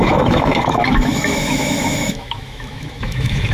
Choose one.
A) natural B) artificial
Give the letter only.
B